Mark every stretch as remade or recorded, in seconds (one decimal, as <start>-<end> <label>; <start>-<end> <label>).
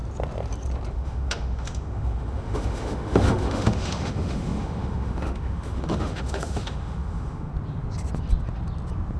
0.0-0.9 recorded; 0.9-7.5 remade; 7.5-9.2 recorded